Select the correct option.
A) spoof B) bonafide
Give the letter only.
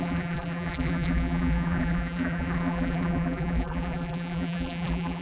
A